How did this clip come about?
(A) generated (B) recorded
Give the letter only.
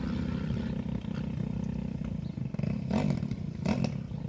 B